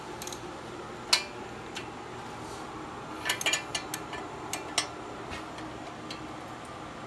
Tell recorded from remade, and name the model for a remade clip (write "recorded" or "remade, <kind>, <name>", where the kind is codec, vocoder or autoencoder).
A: recorded